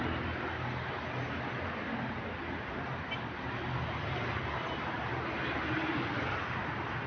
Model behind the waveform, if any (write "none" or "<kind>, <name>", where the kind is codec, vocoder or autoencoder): none